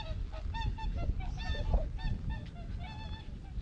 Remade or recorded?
recorded